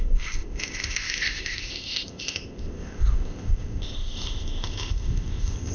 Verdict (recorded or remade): remade